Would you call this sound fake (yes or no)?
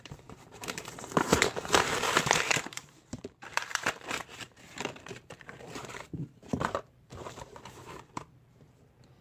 yes